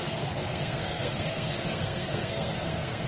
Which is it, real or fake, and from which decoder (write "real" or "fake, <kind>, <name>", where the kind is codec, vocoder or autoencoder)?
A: fake, codec, SNAC